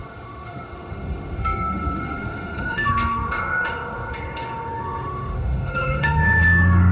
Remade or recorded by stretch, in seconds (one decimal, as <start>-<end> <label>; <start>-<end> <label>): 0.0-6.9 remade